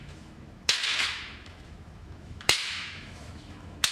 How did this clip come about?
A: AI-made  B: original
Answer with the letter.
A